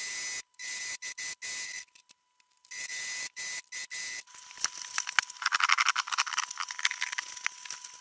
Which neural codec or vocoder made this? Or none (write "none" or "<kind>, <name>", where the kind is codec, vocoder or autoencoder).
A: none